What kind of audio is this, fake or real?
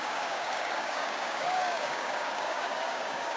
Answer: fake